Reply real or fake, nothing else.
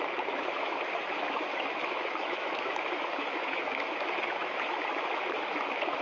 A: fake